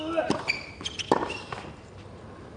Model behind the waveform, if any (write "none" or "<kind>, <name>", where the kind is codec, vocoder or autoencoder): none